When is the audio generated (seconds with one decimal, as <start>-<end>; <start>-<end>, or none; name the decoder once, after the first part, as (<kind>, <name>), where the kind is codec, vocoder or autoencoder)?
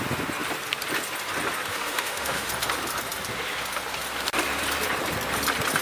1.7-2.5 (autoencoder, DAC-VAE)